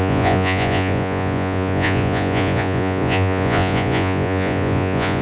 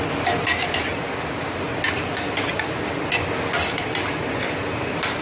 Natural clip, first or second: second